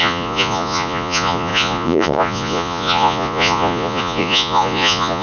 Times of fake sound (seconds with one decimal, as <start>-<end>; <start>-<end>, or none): 0.0-5.2